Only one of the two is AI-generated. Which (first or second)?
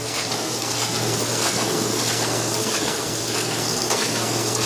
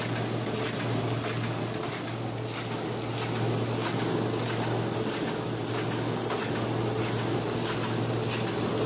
first